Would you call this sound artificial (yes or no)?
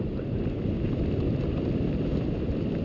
no